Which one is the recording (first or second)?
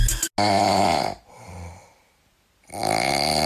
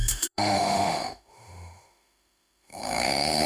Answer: first